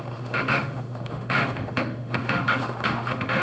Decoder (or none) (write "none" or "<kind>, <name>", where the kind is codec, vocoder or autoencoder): autoencoder, DAC-VAE